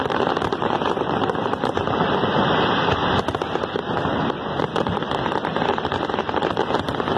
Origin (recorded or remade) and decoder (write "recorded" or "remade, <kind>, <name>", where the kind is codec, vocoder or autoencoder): recorded